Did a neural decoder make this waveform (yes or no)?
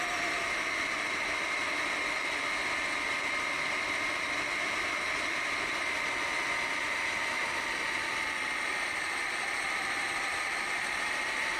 no